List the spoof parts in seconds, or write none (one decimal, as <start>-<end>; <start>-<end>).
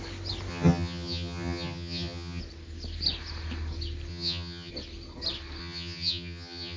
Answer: 0.5-2.4; 4.1-4.7; 5.6-6.8